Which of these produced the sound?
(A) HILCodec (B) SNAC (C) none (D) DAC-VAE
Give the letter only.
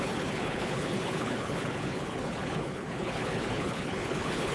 A